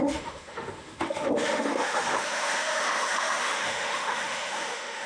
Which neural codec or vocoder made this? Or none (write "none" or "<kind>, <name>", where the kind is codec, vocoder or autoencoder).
autoencoder, DAC-VAE